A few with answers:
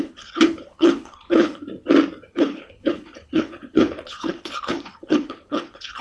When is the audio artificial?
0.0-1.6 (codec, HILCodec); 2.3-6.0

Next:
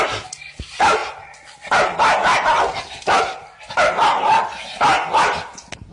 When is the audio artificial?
none

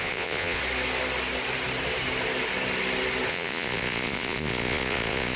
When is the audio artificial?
0.0-0.6 (vocoder, Vocos); 3.3-5.4

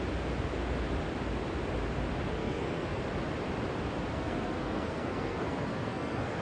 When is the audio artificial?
2.4-3.0 (codec, SNAC); 4.1-6.4

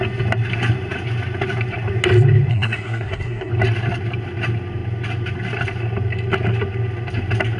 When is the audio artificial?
2.5-3.5 (codec, SNAC)

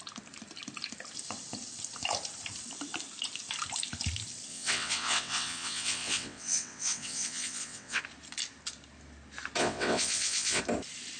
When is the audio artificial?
4.5-8.0 (vocoder, WaveNeXt); 9.6-10.6

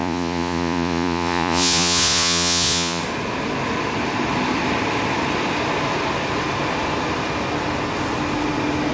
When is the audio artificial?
0.0-3.0 (vocoder, Vocos)